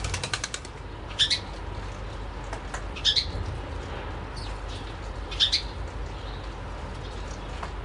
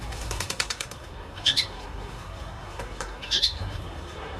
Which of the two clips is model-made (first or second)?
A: second